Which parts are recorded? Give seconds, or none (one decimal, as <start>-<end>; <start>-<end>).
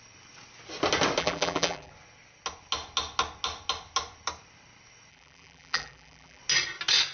0.0-1.2; 1.9-5.1; 6.4-7.1